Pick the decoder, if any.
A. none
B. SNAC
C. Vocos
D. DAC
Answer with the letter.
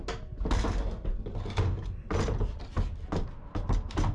A